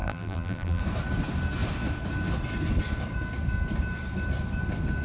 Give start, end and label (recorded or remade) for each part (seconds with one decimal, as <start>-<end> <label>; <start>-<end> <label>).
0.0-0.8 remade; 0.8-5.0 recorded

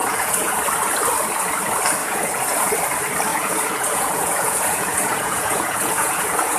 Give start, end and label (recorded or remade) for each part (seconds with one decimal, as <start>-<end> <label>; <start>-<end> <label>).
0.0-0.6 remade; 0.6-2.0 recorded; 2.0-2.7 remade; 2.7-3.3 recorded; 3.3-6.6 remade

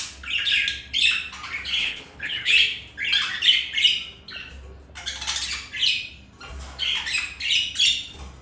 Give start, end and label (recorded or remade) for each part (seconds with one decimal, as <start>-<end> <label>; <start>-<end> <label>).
0.0-1.8 recorded; 1.8-2.5 remade; 2.5-8.4 recorded

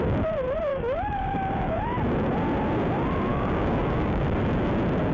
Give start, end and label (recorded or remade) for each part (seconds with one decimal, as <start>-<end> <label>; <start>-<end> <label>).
0.0-0.7 recorded; 0.7-1.8 remade; 1.8-3.3 recorded; 3.3-4.2 remade; 4.2-5.1 recorded